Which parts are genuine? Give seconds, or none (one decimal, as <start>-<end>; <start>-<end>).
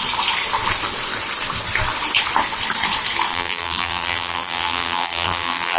0.0-3.3